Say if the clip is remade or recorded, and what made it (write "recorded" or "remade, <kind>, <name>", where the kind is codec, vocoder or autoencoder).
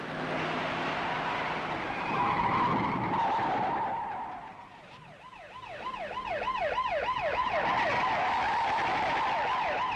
recorded